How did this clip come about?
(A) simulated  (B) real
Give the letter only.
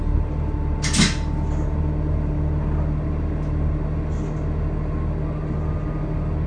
B